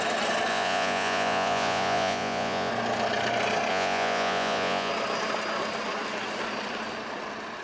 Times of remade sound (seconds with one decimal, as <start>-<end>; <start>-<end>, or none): 0.5-2.7; 3.7-4.9